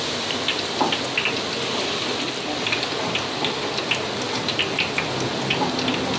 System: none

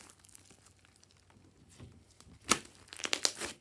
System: none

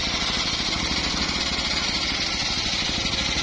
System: none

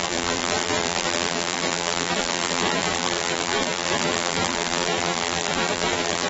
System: vocoder, BigVGAN v2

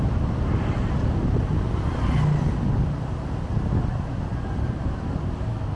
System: none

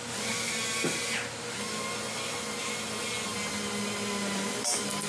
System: none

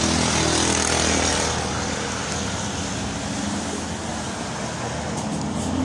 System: none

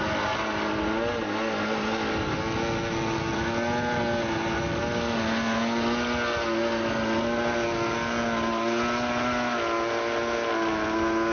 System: none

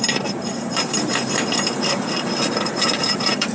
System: vocoder, BigVGAN v2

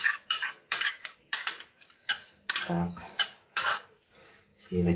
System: codec, DAC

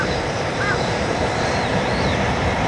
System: vocoder, BigVGAN v2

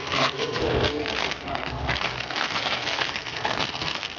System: codec, SNAC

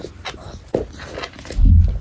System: none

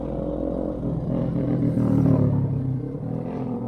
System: vocoder, BigVGAN v2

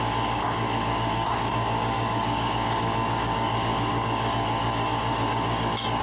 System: codec, DAC